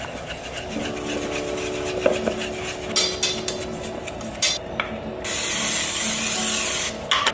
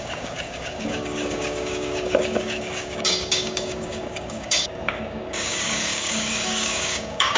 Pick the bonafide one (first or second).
first